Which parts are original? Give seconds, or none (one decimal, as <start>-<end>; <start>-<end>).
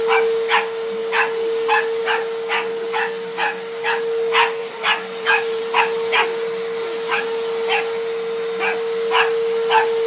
0.0-4.6; 5.6-10.1